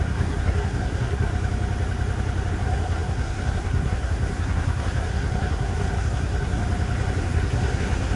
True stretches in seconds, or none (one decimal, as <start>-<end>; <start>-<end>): 1.3-2.5; 6.6-7.2

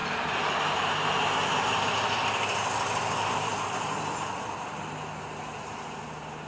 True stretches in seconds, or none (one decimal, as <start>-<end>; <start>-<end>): 0.0-6.5

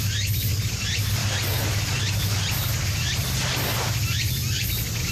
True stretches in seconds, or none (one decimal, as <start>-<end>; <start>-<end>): 0.0-5.1

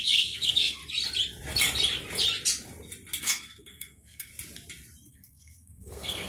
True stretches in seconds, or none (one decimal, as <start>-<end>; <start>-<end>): 0.8-3.2; 4.3-5.1

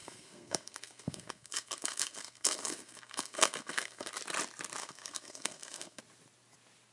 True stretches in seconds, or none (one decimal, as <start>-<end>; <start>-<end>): 4.1-4.8; 6.0-6.9

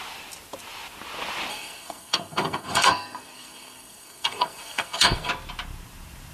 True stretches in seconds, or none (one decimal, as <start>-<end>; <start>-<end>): 0.0-1.5; 5.3-6.3